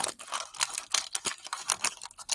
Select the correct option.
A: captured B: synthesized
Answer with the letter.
A